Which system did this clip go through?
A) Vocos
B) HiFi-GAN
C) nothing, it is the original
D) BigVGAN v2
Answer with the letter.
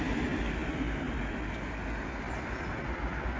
C